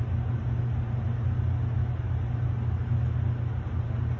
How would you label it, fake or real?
real